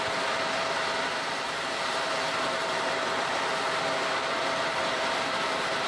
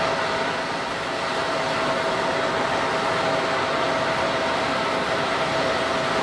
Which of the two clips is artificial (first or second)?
first